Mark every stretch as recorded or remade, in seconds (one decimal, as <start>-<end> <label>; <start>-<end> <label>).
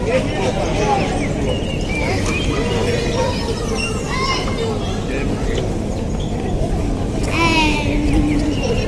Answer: 0.0-8.9 recorded